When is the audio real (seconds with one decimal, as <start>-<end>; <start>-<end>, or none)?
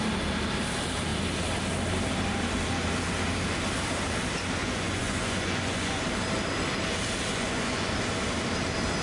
0.0-4.6; 6.0-7.3; 7.9-9.0